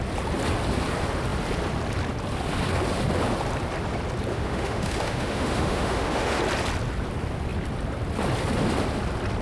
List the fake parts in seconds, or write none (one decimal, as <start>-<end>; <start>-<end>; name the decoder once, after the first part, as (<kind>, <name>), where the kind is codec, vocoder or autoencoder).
4.3-6.4 (autoencoder, DAC-VAE)